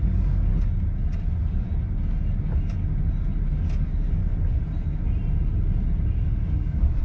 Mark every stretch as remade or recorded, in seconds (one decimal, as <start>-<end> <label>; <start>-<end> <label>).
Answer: 0.0-0.5 remade; 0.5-3.8 recorded; 3.8-4.2 remade; 4.2-6.2 recorded; 6.2-7.0 remade